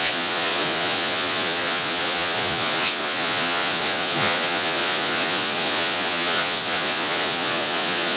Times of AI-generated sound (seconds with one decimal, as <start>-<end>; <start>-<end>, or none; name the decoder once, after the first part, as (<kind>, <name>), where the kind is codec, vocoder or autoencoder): 0.0-8.2 (vocoder, Vocos)